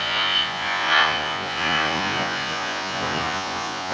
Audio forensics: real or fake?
fake